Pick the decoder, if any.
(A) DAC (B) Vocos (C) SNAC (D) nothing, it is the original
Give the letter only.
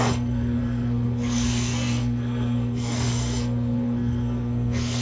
C